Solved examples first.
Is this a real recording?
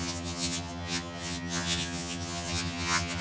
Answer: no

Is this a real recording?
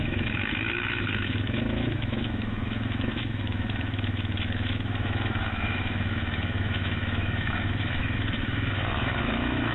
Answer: no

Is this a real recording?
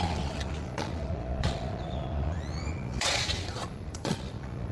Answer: no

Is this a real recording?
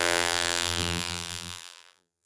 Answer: no